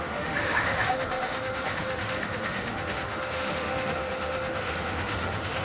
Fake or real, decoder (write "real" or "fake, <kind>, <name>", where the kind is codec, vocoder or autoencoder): fake, autoencoder, DAC-VAE